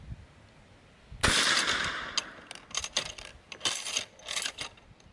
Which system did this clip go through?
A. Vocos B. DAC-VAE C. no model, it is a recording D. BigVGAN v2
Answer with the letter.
C